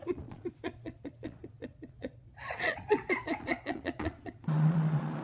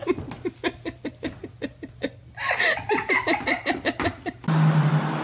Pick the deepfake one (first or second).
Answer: first